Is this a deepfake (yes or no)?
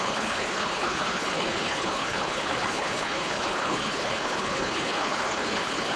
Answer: yes